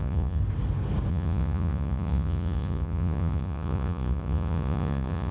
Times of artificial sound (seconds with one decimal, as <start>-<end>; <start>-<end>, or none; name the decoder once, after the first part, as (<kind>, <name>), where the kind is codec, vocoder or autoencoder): 0.0-0.4 (vocoder, Vocos); 1.1-5.3